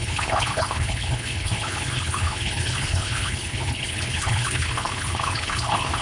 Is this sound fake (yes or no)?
yes